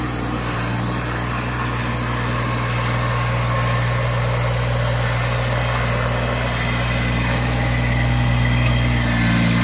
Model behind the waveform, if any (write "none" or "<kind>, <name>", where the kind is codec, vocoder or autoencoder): none